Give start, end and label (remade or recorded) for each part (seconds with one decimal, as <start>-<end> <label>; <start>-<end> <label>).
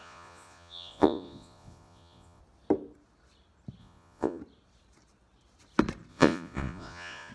0.0-2.4 remade; 2.4-3.8 recorded; 3.8-4.4 remade; 4.4-6.1 recorded; 6.1-7.3 remade